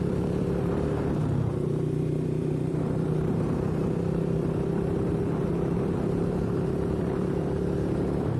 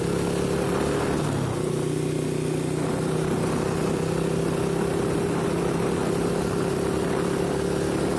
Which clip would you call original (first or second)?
second